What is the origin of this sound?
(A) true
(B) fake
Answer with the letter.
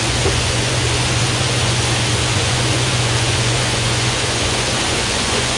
B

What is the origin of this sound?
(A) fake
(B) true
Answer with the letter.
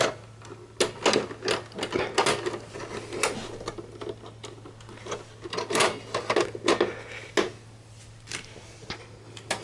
B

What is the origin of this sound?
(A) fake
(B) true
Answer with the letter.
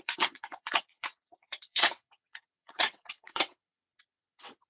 A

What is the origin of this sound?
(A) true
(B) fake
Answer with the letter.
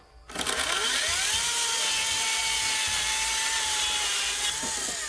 A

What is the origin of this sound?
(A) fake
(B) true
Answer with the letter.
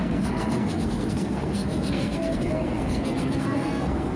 A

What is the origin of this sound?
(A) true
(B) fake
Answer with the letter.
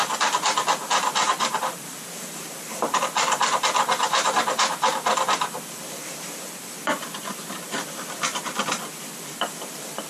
B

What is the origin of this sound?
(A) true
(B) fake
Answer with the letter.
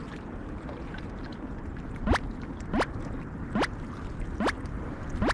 A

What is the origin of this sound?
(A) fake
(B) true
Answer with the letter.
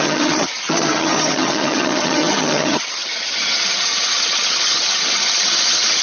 A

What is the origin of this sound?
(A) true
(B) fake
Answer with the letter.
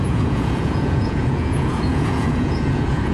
B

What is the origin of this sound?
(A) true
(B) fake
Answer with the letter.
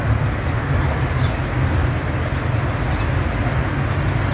A